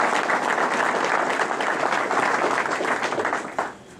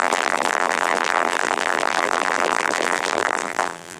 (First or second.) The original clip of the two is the first